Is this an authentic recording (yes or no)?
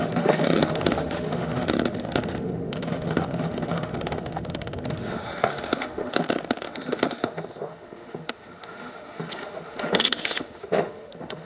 no